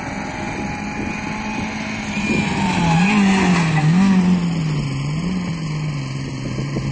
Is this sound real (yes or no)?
yes